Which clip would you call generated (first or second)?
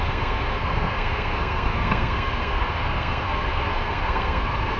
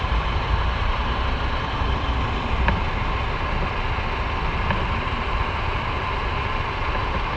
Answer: first